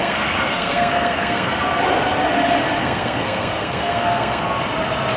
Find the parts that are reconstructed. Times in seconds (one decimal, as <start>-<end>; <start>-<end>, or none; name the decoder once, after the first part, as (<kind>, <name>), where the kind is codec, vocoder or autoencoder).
0.0-1.5 (codec, SNAC); 2.8-4.6